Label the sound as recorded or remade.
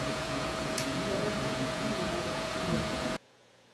remade